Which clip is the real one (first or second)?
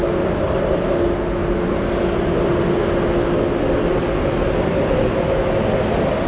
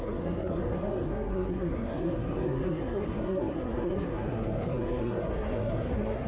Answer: first